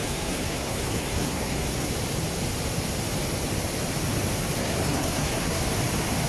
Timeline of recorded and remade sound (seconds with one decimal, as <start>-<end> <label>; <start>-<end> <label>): 0.0-1.9 remade; 1.9-4.6 recorded; 4.6-5.6 remade; 5.6-6.3 recorded

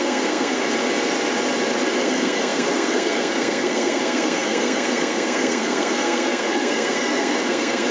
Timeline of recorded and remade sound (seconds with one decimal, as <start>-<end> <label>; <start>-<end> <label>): 0.0-0.6 remade; 0.6-2.0 recorded; 2.0-7.9 remade

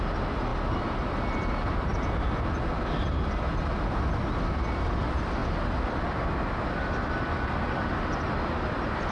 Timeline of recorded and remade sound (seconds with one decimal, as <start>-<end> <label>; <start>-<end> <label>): 0.0-9.1 recorded

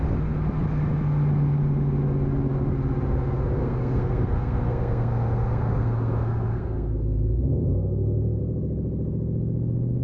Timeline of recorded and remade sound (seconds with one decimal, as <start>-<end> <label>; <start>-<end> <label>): 0.0-3.6 recorded; 3.6-8.4 remade; 8.4-10.0 recorded

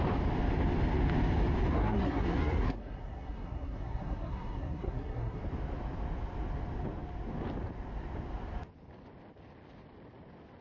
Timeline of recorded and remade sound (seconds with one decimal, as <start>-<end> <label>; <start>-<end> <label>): 0.0-1.7 recorded; 1.7-5.4 remade; 5.4-10.6 recorded